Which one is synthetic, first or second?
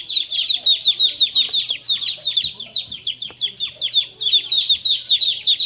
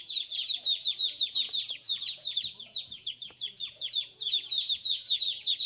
second